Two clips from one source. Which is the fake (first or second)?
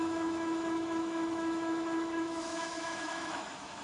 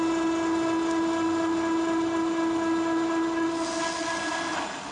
first